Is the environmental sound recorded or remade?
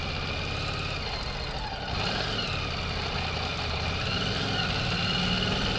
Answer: recorded